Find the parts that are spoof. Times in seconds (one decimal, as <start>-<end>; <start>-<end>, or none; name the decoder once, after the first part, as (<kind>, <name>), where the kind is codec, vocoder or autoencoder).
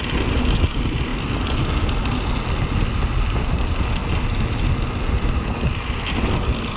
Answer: none